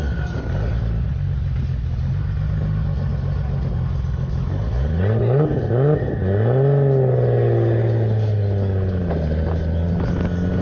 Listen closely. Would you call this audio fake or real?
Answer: real